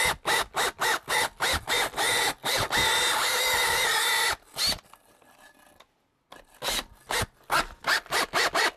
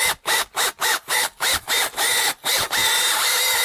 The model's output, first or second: second